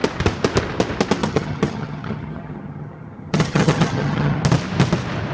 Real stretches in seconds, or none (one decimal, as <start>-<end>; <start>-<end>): 0.0-1.2; 4.4-5.3